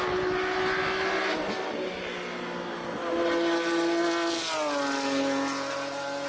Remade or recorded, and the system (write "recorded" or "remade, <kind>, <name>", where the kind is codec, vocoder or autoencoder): recorded